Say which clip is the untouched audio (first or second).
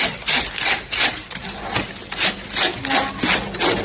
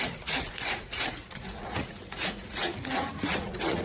first